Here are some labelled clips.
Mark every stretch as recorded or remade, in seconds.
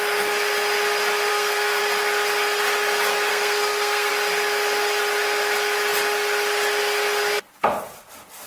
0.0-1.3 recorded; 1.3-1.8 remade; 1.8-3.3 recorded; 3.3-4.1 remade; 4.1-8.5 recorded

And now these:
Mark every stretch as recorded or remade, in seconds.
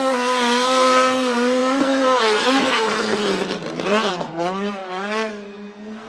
0.0-3.2 remade; 3.2-4.1 recorded; 4.1-6.1 remade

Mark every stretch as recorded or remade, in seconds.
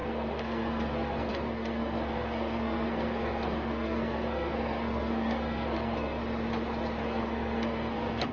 0.0-6.2 remade; 6.2-7.0 recorded; 7.0-8.3 remade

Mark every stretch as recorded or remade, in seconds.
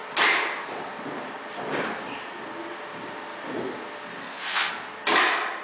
0.0-4.2 recorded; 4.2-4.7 remade; 4.7-5.6 recorded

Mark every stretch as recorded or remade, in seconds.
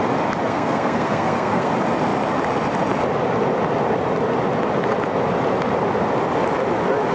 0.0-0.4 recorded; 0.4-1.7 remade; 1.7-7.1 recorded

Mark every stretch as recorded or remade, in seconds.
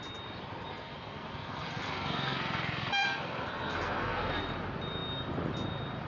0.0-0.7 recorded; 0.7-4.4 remade; 4.4-6.1 recorded